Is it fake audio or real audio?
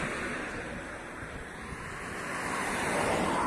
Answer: fake